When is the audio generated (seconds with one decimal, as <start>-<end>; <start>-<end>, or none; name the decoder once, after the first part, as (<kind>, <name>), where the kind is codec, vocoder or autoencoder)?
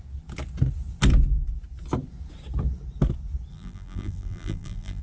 3.5-5.0 (vocoder, BigVGAN v2)